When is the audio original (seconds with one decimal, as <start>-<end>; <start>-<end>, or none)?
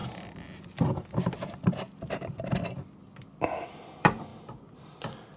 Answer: 0.0-3.2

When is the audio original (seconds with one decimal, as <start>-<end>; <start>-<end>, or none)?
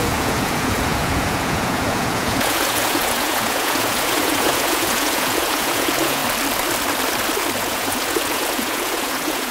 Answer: 6.2-7.6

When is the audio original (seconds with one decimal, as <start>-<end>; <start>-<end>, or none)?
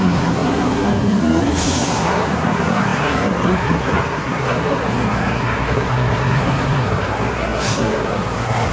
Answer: none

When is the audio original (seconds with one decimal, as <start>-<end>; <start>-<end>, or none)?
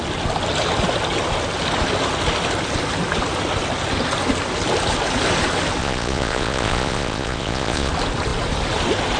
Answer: 0.0-5.8; 7.9-9.2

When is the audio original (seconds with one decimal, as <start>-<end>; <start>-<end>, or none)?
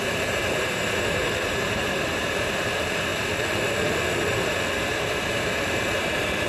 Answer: 3.1-4.9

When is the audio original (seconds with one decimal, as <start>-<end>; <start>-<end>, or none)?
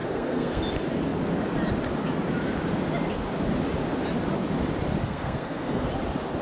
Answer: 0.6-5.0; 5.9-6.4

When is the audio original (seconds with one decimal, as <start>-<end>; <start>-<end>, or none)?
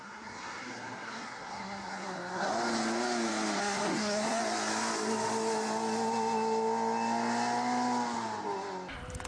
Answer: 2.5-3.6; 4.4-9.3